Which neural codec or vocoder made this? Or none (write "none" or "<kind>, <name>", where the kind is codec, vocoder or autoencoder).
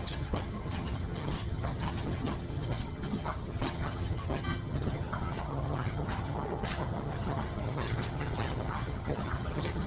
vocoder, HiFi-GAN